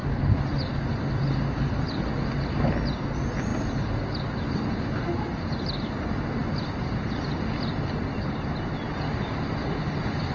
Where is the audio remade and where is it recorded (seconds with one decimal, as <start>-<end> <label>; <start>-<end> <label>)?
0.0-10.3 recorded